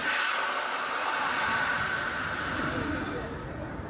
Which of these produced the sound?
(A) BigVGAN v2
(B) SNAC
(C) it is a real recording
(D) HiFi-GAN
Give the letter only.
C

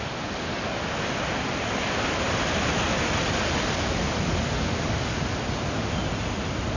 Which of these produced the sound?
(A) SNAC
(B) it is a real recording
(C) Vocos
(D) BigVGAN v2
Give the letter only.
B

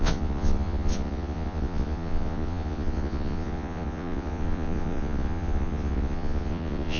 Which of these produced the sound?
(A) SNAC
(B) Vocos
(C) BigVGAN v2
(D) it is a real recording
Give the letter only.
B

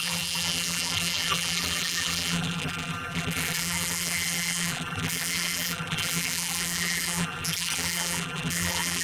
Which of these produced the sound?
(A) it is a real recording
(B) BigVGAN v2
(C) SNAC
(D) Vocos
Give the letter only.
B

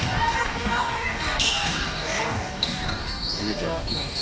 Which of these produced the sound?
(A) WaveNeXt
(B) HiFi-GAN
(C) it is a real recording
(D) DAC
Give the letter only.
D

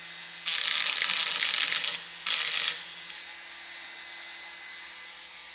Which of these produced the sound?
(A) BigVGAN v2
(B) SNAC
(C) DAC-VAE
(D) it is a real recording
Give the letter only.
D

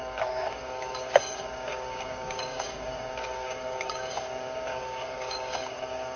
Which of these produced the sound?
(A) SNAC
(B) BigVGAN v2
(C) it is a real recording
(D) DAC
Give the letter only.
D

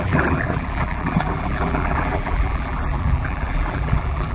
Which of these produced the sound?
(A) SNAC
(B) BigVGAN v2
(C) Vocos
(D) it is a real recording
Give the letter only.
B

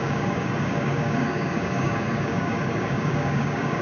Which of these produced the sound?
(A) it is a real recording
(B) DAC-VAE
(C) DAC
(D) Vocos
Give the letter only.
C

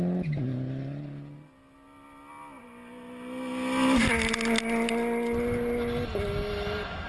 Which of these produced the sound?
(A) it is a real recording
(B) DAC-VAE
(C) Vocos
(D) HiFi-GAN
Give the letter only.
A